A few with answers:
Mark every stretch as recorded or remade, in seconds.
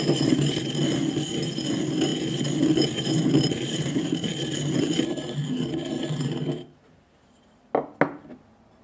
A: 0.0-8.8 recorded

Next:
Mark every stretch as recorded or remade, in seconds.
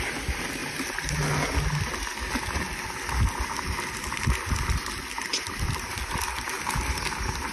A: 0.0-5.3 recorded; 5.3-6.0 remade; 6.0-7.5 recorded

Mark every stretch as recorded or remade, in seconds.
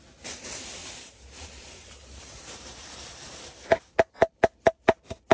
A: 0.0-0.8 recorded; 0.8-3.3 remade; 3.3-5.3 recorded